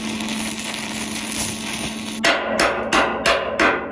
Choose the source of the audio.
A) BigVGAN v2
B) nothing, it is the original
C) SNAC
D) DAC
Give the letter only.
B